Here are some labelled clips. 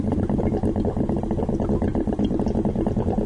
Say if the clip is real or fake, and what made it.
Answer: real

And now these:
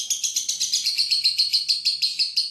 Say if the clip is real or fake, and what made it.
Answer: real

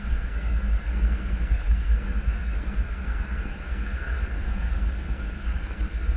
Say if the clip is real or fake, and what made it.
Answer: fake, codec, SNAC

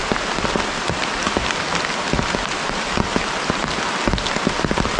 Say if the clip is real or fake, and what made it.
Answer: real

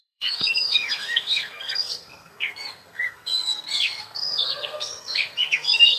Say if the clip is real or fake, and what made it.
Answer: fake, codec, SNAC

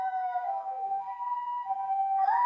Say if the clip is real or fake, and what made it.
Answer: fake, codec, SNAC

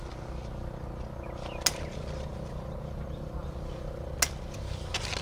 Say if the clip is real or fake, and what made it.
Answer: real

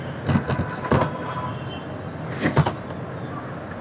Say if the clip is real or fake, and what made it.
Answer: real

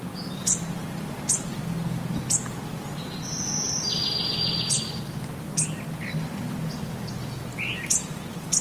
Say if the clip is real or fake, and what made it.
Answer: real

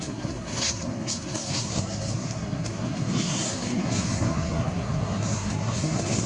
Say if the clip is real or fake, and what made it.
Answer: fake, codec, SNAC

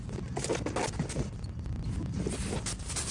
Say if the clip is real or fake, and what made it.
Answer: real